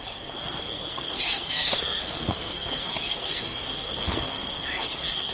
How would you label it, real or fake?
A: fake